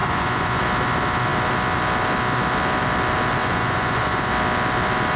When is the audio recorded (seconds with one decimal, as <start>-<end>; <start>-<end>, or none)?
0.6-3.4; 4.3-5.2